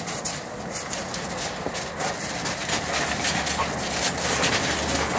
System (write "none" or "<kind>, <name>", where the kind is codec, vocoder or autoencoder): none